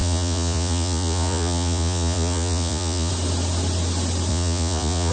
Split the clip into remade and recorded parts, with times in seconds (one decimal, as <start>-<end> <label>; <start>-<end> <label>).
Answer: 0.0-3.1 remade; 3.1-4.3 recorded; 4.3-5.1 remade